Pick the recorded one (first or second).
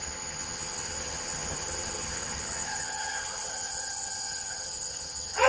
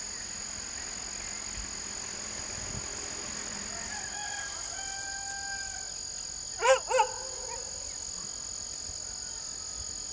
second